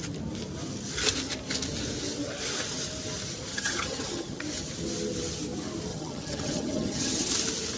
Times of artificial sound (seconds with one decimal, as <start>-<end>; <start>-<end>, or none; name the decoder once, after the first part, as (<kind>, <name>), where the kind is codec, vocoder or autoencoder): 3.5-4.4 (vocoder, HiFi-GAN); 5.9-7.3